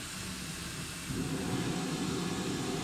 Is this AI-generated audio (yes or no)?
no